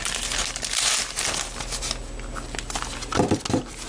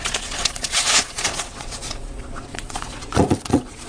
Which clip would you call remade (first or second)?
second